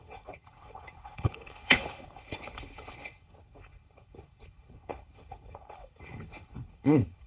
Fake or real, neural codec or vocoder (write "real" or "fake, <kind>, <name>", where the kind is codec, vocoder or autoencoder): fake, codec, HILCodec